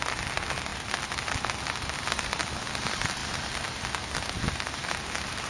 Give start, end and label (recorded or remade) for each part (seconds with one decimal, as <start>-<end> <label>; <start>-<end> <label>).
0.0-5.5 recorded